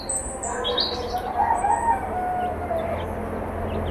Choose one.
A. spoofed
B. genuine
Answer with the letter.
B